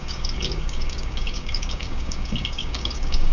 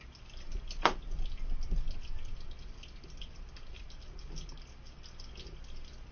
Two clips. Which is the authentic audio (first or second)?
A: second